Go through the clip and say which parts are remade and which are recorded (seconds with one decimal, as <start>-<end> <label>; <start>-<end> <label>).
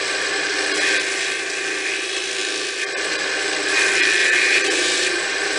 0.0-4.2 recorded; 4.2-5.6 remade